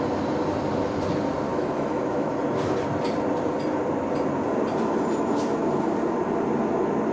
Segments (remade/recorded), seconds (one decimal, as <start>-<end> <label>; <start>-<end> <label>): 0.0-1.5 recorded; 1.5-2.3 remade; 2.3-7.1 recorded